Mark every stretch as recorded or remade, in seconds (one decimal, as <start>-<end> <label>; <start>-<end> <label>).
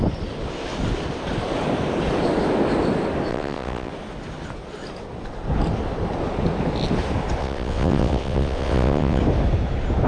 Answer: 0.0-3.3 recorded; 3.3-3.9 remade; 3.9-7.4 recorded; 7.4-9.2 remade; 9.2-10.1 recorded